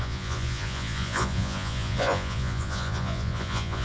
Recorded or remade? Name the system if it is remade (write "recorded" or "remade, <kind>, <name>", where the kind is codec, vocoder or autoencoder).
remade, vocoder, Vocos